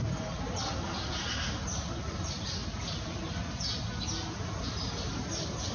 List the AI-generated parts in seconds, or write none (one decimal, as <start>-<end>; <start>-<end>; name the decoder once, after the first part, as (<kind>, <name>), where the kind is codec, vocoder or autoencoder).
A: none